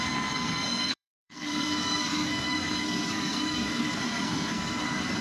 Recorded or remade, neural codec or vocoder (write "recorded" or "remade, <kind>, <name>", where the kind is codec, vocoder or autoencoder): remade, codec, SNAC